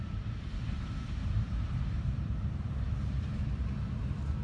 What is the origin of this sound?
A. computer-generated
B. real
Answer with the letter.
A